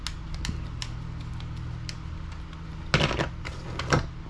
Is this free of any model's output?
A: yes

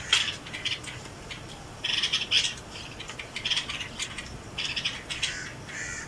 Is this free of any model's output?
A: no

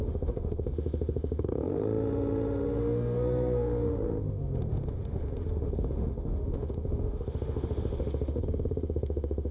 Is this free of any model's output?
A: no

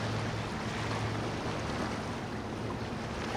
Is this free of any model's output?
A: yes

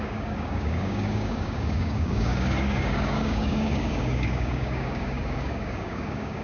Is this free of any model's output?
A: no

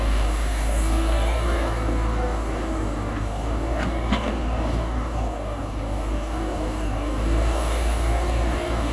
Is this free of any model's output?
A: no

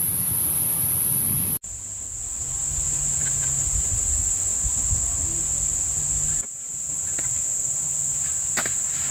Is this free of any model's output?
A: yes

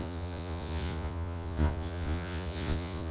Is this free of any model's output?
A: no